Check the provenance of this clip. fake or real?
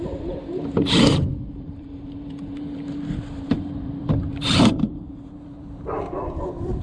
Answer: fake